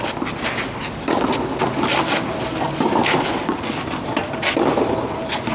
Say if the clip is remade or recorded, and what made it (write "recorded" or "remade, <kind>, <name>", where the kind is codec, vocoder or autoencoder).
recorded